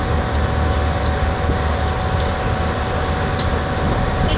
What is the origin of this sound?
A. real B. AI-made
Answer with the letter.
A